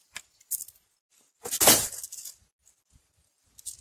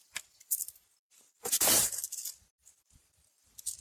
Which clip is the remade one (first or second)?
second